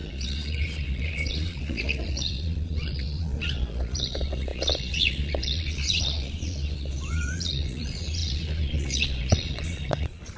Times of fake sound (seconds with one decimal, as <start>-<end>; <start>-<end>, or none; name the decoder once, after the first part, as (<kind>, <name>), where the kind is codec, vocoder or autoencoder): 0.0-10.4 (vocoder, Vocos)